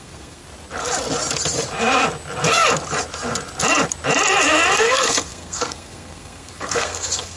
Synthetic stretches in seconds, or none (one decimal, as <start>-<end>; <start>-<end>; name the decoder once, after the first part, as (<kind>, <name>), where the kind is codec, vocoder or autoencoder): 0.0-0.4 (codec, SNAC); 4.8-7.4